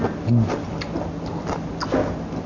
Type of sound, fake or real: real